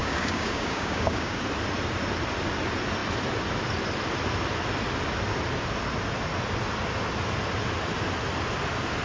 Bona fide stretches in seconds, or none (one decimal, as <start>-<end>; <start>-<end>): 1.4-9.0